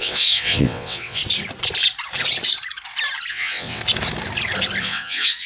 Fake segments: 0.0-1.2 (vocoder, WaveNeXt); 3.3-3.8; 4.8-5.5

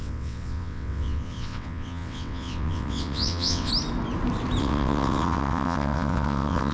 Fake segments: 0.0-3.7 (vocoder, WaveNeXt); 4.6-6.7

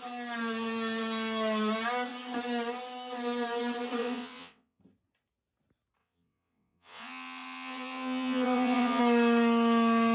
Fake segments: 4.0-4.8 (vocoder, WaveNeXt); 6.0-9.0